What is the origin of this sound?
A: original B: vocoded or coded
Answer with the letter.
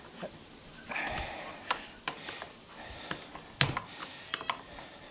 A